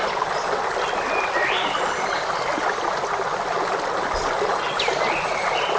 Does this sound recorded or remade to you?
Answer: recorded